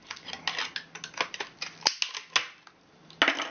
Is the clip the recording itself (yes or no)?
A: yes